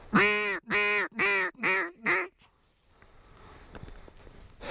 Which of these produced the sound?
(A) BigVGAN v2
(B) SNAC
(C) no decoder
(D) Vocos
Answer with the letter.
C